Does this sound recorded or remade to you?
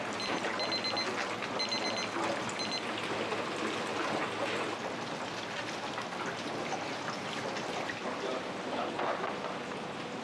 recorded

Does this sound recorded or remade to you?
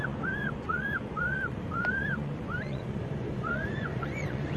remade